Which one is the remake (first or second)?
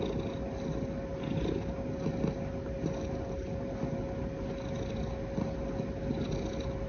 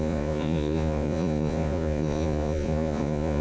second